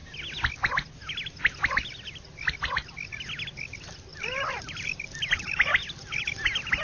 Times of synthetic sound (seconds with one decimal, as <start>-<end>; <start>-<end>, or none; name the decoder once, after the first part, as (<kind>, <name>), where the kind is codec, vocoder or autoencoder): none